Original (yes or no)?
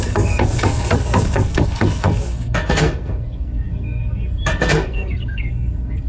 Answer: no